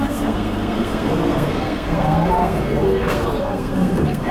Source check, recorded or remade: remade